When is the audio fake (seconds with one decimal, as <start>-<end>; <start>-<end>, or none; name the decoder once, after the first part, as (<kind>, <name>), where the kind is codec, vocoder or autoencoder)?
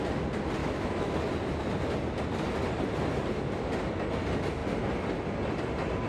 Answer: 0.6-1.2 (autoencoder, DAC-VAE)